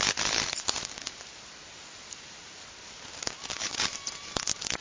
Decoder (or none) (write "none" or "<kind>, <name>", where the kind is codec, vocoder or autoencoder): vocoder, BigVGAN v2